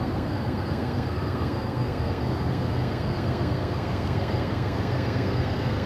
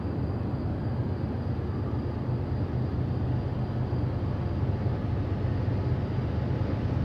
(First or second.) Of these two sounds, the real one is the second